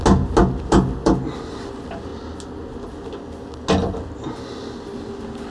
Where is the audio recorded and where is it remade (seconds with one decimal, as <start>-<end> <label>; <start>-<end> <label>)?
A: 0.0-5.5 recorded